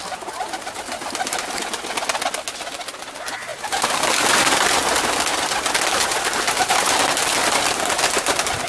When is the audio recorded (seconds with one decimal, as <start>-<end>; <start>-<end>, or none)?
0.0-8.7